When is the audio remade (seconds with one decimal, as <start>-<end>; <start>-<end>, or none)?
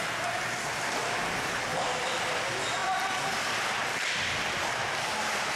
1.7-2.4; 2.8-4.4